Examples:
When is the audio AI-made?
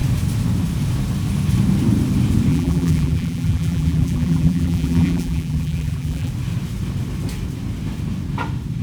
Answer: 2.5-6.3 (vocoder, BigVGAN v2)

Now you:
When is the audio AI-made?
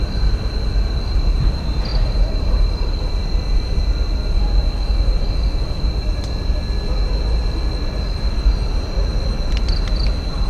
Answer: 1.9-3.0 (vocoder, BigVGAN v2)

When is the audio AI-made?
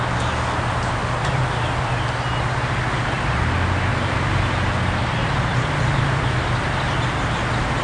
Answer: 3.9-4.5 (vocoder, BigVGAN v2); 5.2-6.2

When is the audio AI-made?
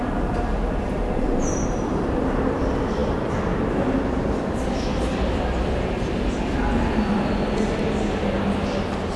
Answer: 0.0-7.4 (vocoder, BigVGAN v2)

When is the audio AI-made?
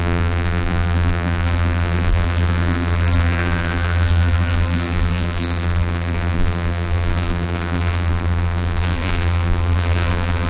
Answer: 0.0-10.5 (vocoder, BigVGAN v2)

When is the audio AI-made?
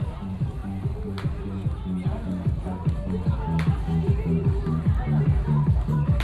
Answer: 0.0-0.6 (vocoder, BigVGAN v2); 4.2-6.2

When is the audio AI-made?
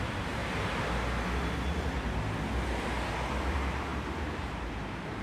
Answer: 0.0-0.4 (vocoder, BigVGAN v2); 3.5-5.2